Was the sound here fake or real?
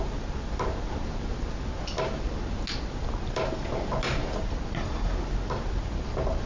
real